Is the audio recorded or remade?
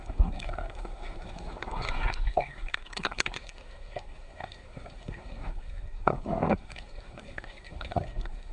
remade